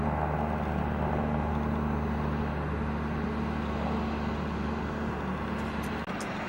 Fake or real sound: real